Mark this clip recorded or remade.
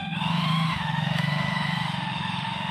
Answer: remade